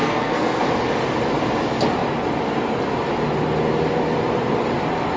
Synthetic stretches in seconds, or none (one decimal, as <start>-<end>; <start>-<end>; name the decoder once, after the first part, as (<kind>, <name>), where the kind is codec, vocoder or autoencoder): 0.0-0.6 (codec, SNAC)